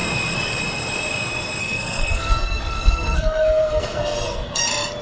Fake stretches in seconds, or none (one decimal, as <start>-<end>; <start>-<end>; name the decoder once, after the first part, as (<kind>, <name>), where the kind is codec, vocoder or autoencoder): 1.6-4.6 (codec, SNAC)